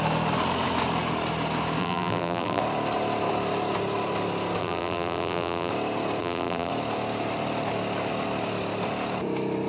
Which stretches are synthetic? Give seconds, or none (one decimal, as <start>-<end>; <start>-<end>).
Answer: 1.8-2.6; 4.6-5.7; 6.2-6.7